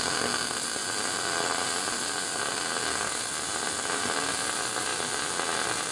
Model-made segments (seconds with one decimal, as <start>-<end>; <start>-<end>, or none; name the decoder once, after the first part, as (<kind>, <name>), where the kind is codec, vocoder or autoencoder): 0.8-4.3 (vocoder, BigVGAN v2)